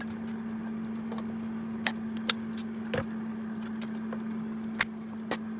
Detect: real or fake real